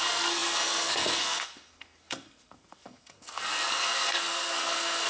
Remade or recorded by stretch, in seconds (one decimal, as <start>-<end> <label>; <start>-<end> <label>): 0.0-5.1 remade